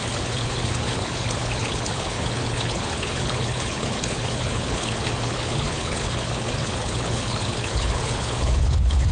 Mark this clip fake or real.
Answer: fake